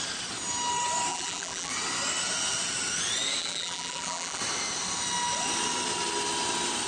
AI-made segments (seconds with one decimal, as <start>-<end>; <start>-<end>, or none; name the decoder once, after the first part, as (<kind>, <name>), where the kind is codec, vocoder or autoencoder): 1.1-1.7 (vocoder, BigVGAN v2); 3.4-4.4